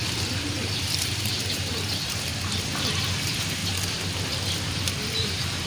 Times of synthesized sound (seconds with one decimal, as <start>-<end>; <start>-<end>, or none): 0.6-1.9